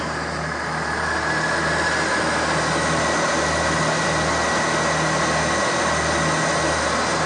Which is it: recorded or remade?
recorded